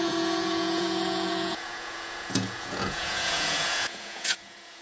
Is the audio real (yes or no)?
no